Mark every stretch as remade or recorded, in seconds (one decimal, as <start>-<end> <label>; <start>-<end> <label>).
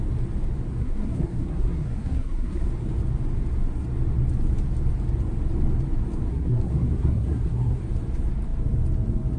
0.0-0.8 recorded; 0.8-2.7 remade; 2.7-6.3 recorded; 6.3-7.8 remade; 7.8-9.4 recorded